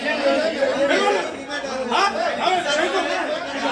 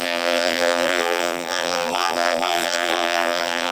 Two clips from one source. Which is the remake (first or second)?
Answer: second